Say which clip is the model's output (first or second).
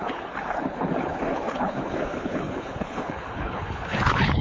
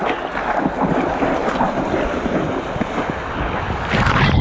first